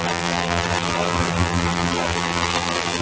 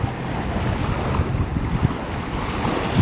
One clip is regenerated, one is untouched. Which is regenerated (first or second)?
first